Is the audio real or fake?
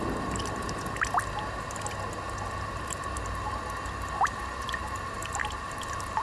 real